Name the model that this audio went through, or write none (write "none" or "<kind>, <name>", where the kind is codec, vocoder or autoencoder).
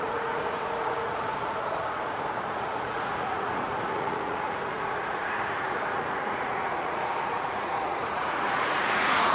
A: vocoder, Vocos